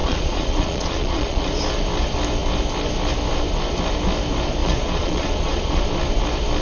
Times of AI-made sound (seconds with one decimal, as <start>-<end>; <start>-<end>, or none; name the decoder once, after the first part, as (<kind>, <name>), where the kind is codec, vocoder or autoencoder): 0.0-1.5 (vocoder, Vocos); 4.6-5.8